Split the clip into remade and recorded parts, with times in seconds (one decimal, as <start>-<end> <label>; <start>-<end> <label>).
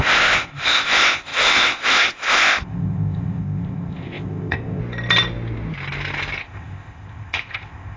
0.0-4.8 remade; 4.8-6.4 recorded; 6.4-8.0 remade